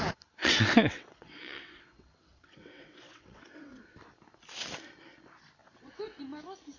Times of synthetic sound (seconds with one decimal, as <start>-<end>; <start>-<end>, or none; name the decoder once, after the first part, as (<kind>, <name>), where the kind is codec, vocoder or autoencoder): 0.4-3.8 (vocoder, WaveNeXt); 5.6-6.2